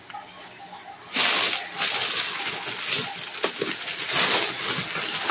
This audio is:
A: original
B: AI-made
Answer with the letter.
A